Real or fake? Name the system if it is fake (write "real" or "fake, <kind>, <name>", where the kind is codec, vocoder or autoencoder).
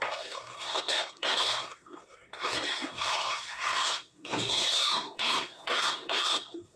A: fake, codec, SNAC